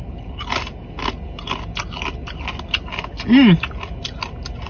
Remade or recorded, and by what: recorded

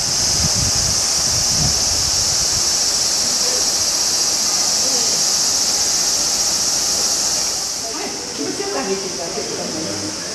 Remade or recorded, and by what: recorded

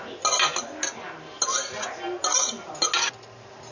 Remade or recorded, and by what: recorded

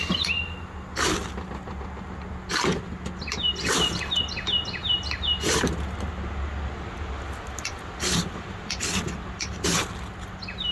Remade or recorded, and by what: recorded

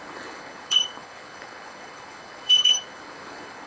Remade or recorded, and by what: remade, codec, HILCodec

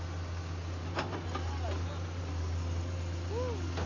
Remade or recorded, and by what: recorded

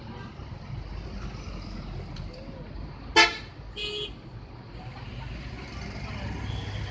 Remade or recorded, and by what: recorded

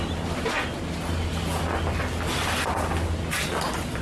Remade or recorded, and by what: recorded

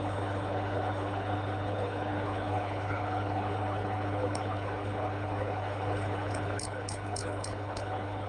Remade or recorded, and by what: remade, codec, HILCodec